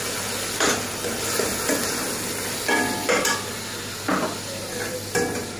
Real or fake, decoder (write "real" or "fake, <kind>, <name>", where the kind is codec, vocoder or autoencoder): real